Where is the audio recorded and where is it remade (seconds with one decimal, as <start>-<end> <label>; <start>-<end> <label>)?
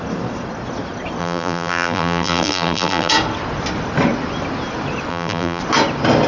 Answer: 0.0-1.2 recorded; 1.2-3.1 remade; 3.1-5.1 recorded; 5.1-5.6 remade; 5.6-6.3 recorded